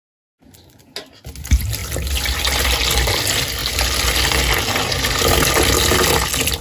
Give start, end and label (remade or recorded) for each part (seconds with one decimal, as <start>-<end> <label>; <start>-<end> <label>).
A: 0.0-6.6 recorded